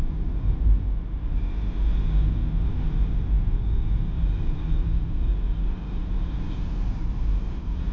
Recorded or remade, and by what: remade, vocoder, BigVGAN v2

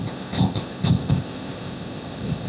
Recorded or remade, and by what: remade, codec, ZipCodec